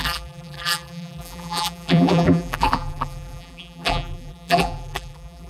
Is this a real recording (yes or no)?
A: no